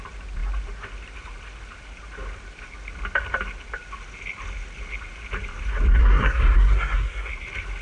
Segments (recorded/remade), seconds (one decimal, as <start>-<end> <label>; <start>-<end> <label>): 0.0-6.0 recorded; 6.0-7.3 remade; 7.3-7.8 recorded